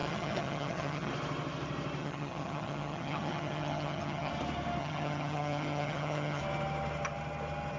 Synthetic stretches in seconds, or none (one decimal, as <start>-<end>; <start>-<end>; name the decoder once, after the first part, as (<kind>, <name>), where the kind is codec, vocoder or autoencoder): 0.0-1.1 (vocoder, HiFi-GAN); 2.0-4.3; 4.8-6.4